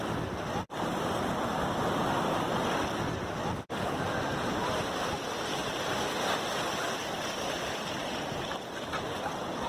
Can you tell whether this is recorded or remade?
recorded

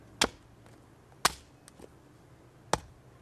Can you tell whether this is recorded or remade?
recorded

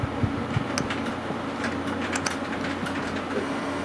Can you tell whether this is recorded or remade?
recorded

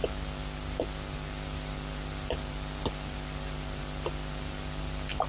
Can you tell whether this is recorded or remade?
recorded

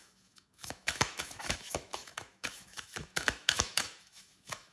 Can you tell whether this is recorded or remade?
remade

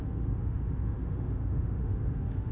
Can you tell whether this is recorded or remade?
remade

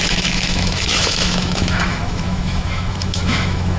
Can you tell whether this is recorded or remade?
remade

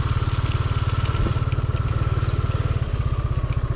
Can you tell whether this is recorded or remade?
recorded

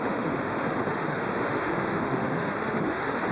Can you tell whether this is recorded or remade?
remade